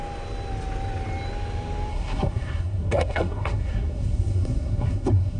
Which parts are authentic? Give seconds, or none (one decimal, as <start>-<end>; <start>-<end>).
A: 0.0-1.9